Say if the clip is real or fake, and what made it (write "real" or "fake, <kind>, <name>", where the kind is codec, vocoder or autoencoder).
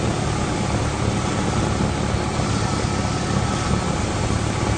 real